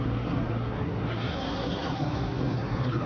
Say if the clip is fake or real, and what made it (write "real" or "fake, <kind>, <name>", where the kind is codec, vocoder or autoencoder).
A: fake, codec, SNAC